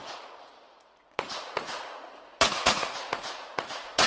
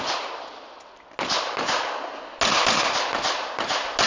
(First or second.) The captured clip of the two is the second